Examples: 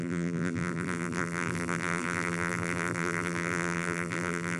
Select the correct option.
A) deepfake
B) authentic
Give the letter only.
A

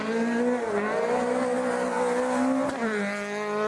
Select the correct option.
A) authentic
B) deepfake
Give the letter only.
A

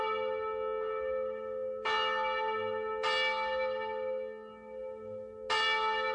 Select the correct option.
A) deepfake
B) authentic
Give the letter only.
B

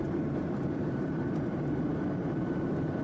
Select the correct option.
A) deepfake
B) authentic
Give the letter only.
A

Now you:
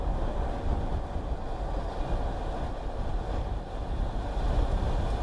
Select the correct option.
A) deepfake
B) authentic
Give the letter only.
B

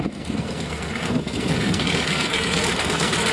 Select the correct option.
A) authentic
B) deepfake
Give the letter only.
B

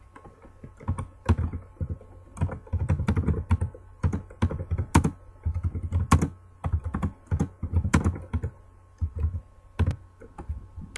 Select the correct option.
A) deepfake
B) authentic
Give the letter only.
B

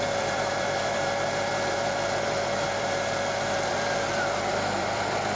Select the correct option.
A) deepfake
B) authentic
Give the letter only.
A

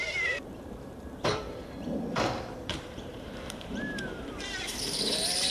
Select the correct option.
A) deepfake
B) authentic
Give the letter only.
A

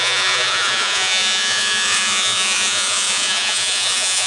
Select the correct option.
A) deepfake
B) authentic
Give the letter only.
A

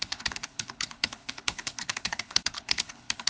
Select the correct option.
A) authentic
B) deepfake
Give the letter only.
B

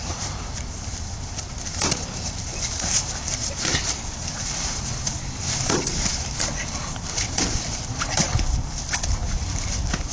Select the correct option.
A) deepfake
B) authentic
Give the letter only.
A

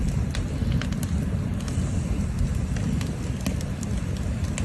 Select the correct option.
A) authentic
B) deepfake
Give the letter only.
A